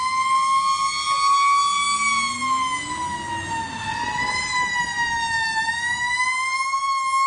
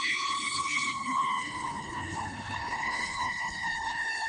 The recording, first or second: first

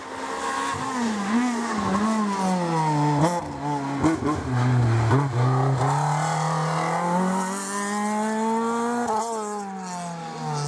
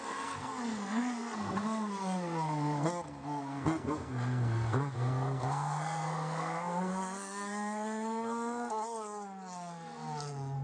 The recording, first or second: first